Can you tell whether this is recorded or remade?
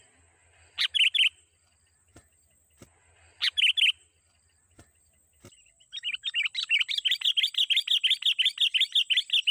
recorded